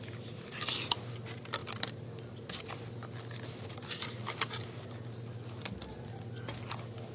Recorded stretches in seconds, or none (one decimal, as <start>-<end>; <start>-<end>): 0.0-7.1